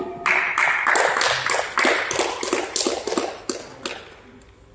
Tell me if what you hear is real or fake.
real